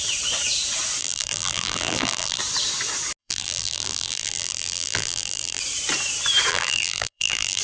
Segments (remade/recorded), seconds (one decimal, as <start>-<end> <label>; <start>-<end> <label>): 0.0-1.0 recorded; 1.0-2.4 remade; 2.4-3.2 recorded; 3.2-5.6 remade; 5.6-6.5 recorded; 6.5-7.6 remade

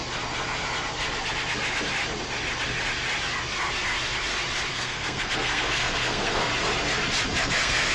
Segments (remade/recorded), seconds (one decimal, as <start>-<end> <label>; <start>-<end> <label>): 0.0-4.7 recorded; 4.7-6.5 remade; 6.5-7.4 recorded; 7.4-7.9 remade

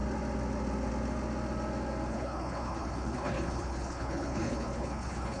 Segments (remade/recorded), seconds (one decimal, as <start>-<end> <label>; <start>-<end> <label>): 0.0-2.1 recorded; 2.1-5.4 remade

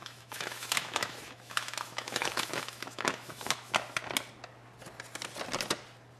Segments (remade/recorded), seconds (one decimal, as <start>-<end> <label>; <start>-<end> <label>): 0.0-3.7 remade; 3.7-6.2 recorded

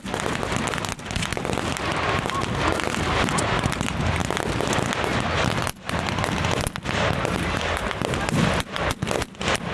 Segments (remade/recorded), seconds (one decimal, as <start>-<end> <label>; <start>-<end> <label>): 0.0-9.7 recorded

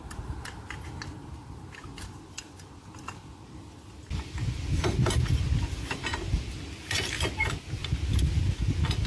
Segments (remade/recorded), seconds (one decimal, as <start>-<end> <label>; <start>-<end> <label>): 0.0-9.1 recorded

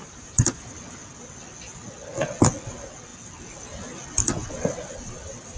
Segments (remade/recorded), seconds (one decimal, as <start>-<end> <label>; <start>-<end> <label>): 0.0-0.7 remade; 0.7-5.6 recorded